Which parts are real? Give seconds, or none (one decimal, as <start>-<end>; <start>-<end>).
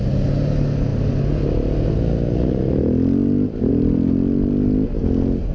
0.0-5.5